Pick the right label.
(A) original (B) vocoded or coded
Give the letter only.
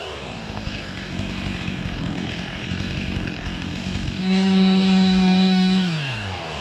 B